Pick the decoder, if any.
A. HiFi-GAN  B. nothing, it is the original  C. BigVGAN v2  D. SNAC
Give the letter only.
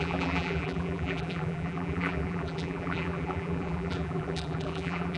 C